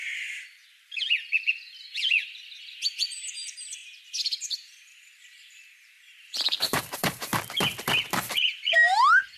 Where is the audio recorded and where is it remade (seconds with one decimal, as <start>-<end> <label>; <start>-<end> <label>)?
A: 0.0-0.6 remade; 0.6-2.9 recorded; 2.9-3.8 remade; 3.8-4.4 recorded; 4.4-7.3 remade; 7.3-8.1 recorded; 8.1-9.4 remade